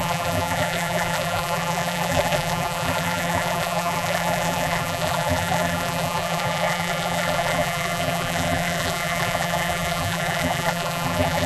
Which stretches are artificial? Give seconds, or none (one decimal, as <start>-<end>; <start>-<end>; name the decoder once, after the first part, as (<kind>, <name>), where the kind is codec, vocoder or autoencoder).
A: 0.0-11.5 (vocoder, BigVGAN v2)